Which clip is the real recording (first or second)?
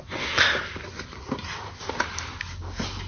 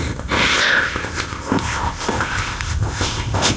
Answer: first